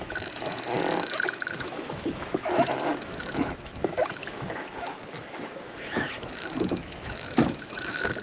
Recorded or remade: remade